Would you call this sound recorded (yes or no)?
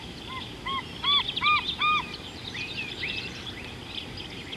yes